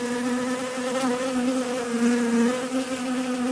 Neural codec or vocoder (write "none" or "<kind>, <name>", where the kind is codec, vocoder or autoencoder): none